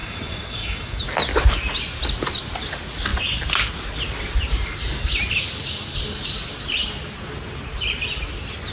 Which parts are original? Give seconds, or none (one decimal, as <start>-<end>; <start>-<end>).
1.0-8.7